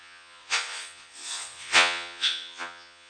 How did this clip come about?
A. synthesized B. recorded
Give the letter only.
A